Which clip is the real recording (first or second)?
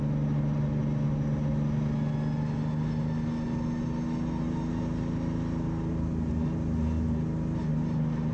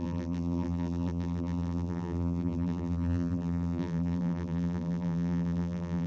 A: first